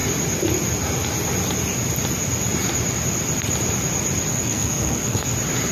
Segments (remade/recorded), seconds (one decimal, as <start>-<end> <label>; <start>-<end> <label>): 0.0-4.3 recorded; 4.3-5.3 remade; 5.3-5.7 recorded

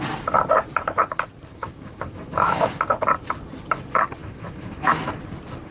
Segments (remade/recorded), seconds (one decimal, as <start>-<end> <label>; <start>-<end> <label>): 0.0-1.5 recorded; 1.5-2.7 remade; 2.7-4.2 recorded; 4.2-5.1 remade; 5.1-5.7 recorded

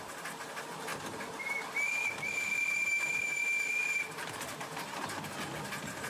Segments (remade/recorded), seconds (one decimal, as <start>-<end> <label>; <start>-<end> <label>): 0.0-0.9 recorded; 0.9-1.5 remade; 1.5-2.8 recorded; 2.8-3.8 remade; 3.8-6.1 recorded